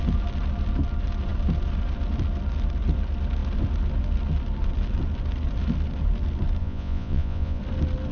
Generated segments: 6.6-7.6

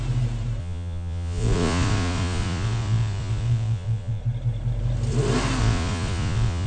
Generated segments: 0.6-4.2; 5.6-6.7

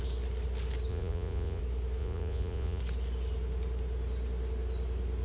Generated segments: 0.9-1.6; 2.0-2.8